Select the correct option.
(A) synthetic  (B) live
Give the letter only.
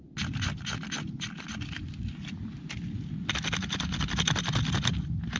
B